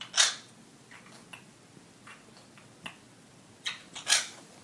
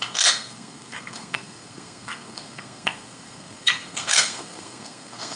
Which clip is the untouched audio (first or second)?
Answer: first